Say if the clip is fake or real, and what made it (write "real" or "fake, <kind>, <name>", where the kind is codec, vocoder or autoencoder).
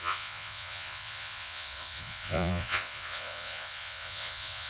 fake, vocoder, Vocos